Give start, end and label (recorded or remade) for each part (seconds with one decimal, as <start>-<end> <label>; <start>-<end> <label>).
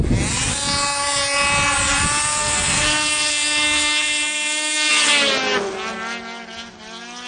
0.0-2.4 recorded; 2.4-4.9 remade; 4.9-7.3 recorded